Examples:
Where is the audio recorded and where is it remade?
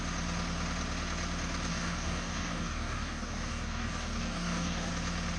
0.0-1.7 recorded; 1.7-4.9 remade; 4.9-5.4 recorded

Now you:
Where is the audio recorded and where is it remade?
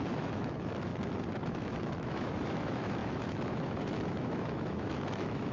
0.0-0.9 remade; 0.9-1.4 recorded; 1.4-5.5 remade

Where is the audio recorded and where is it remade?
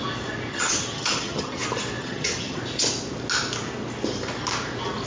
0.0-0.5 recorded; 0.5-1.6 remade; 1.6-2.0 recorded; 2.0-2.6 remade; 2.6-5.1 recorded